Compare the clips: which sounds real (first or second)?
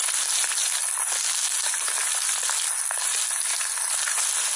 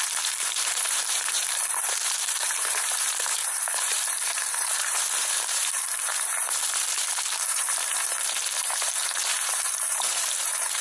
first